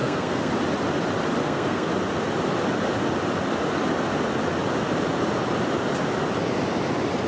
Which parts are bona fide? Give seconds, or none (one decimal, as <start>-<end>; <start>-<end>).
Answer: 0.5-1.4; 1.9-7.3